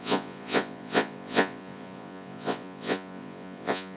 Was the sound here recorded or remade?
remade